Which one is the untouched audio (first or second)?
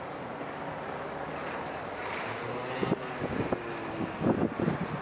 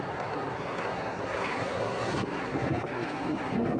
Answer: first